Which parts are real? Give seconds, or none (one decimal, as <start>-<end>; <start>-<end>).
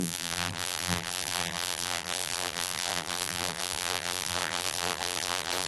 none